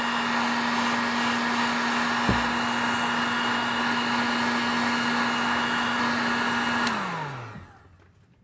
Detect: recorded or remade recorded